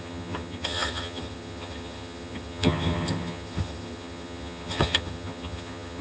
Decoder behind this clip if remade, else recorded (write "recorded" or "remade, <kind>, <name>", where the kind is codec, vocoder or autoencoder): remade, vocoder, HiFi-GAN